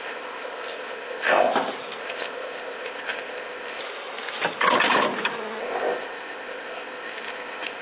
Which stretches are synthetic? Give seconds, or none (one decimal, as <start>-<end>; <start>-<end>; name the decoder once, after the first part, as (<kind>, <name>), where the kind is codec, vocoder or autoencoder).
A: 0.0-1.5 (codec, ZipCodec); 2.0-3.8; 5.6-7.8

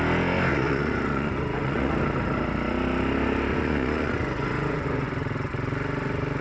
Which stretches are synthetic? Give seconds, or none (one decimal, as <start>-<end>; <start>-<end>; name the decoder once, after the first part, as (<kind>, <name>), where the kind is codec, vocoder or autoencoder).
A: 0.5-1.9 (vocoder, Vocos); 3.5-5.1

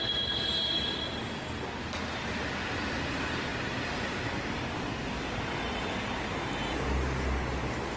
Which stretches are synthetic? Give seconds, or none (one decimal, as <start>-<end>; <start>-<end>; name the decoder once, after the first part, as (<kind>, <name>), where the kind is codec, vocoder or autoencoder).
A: none

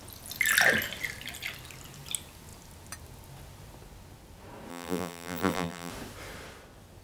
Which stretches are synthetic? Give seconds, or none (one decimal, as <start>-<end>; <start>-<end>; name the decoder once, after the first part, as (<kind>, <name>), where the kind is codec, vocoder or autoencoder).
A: 4.7-5.9 (vocoder, BigVGAN v2)

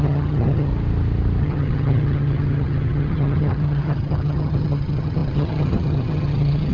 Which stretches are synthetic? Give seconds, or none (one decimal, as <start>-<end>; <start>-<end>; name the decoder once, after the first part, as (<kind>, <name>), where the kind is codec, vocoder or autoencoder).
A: 0.0-0.7 (vocoder, HiFi-GAN); 1.4-6.7

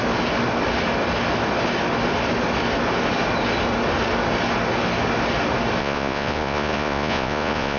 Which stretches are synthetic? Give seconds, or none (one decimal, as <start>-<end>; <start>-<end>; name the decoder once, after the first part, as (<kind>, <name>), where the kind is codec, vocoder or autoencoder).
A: 5.8-7.8 (vocoder, Vocos)